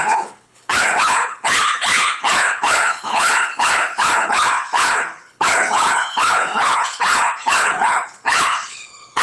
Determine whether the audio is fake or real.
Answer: fake